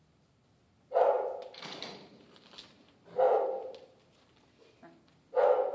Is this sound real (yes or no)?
yes